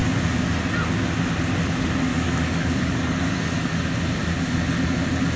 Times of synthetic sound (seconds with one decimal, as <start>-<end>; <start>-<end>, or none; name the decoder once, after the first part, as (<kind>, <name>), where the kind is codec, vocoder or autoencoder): 2.1-3.7 (codec, DAC)